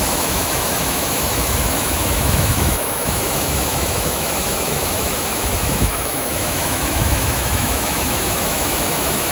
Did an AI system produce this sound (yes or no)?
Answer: yes